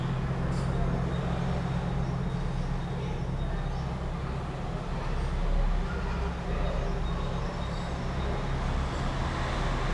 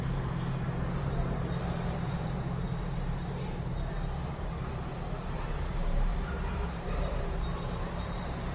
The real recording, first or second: first